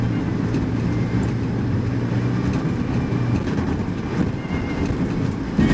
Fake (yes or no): no